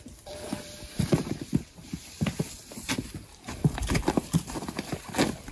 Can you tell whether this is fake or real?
fake